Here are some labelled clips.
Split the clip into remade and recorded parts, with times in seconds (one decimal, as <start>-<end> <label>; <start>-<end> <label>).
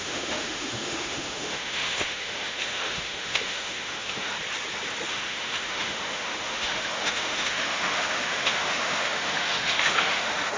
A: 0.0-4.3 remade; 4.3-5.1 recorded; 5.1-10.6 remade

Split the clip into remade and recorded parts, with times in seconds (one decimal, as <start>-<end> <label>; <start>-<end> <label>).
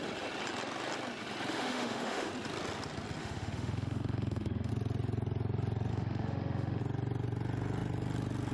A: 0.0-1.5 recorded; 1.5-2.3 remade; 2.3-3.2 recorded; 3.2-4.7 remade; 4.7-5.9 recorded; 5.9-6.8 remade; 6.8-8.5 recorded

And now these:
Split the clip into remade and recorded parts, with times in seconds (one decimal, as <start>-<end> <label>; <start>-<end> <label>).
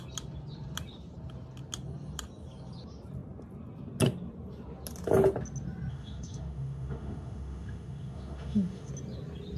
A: 0.0-5.9 recorded; 5.9-8.9 remade; 8.9-9.6 recorded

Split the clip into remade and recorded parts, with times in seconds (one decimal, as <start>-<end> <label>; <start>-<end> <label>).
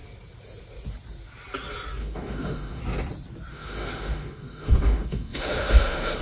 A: 0.0-2.0 recorded; 2.0-2.8 remade; 2.8-3.5 recorded; 3.5-6.2 remade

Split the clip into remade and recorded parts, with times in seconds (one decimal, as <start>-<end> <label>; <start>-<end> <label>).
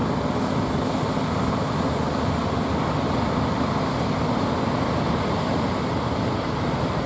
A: 0.0-7.1 recorded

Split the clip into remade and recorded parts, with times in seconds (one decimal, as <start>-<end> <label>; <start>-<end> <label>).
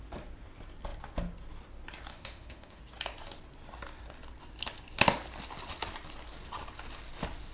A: 0.0-2.1 recorded; 2.1-2.8 remade; 2.8-7.5 recorded